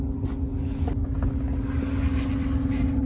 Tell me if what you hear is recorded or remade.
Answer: recorded